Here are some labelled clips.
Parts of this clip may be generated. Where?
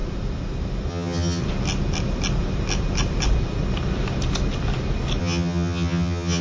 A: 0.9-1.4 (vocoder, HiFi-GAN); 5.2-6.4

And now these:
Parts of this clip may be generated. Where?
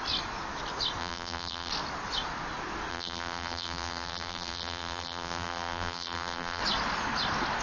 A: 1.0-1.7 (vocoder, BigVGAN v2); 2.9-6.6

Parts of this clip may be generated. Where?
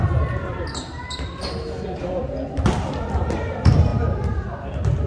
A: none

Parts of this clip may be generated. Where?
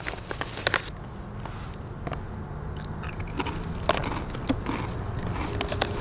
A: none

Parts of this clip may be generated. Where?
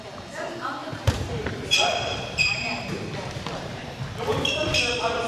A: 0.8-4.0 (vocoder, BigVGAN v2)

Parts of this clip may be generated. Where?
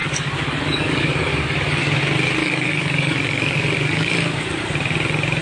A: 0.0-2.0 (codec, DAC); 2.4-4.1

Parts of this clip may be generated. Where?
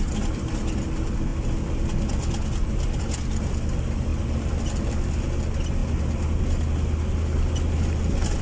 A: none